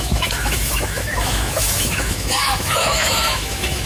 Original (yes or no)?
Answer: no